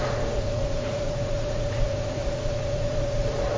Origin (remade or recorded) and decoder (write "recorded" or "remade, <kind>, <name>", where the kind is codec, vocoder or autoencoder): remade, vocoder, Vocos